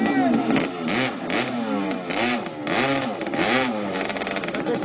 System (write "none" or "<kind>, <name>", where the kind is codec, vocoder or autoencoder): none